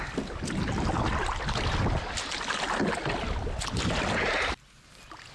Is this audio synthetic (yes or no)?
no